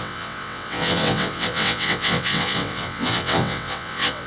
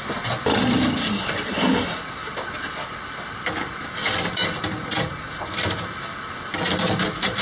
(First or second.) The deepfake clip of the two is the first